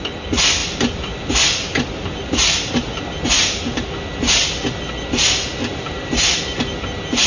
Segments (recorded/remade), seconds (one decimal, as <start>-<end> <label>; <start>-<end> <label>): 0.0-5.6 recorded; 5.6-6.4 remade; 6.4-7.3 recorded

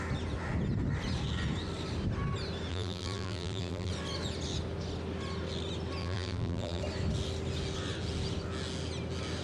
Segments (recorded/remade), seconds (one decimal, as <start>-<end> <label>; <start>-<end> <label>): 0.0-2.7 recorded; 2.7-3.9 remade; 3.9-6.0 recorded; 6.0-6.8 remade; 6.8-9.4 recorded

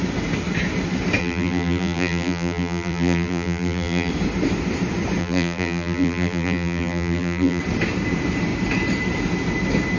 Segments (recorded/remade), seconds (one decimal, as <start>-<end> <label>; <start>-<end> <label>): 0.0-1.2 recorded; 1.2-4.1 remade; 4.1-5.2 recorded; 5.2-7.6 remade; 7.6-10.0 recorded

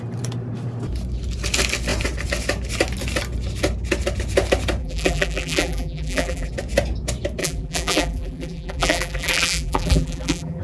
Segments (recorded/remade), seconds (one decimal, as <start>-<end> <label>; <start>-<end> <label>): 0.0-4.8 recorded; 4.8-6.5 remade; 6.5-7.4 recorded; 7.4-10.6 remade

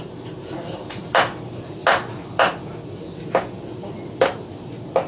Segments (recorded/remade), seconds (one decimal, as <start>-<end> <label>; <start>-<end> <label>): 0.0-1.8 remade; 1.8-5.1 recorded

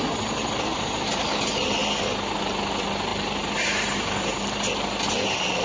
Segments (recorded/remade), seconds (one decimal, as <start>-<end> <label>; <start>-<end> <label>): 0.0-0.7 recorded; 0.7-1.3 remade; 1.3-3.1 recorded; 3.1-4.3 remade; 4.3-5.6 recorded

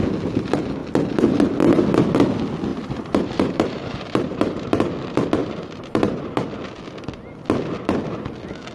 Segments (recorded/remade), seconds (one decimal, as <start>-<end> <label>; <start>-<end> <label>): 0.0-2.7 recorded; 2.7-4.8 remade; 4.8-5.4 recorded; 5.4-6.2 remade; 6.2-8.7 recorded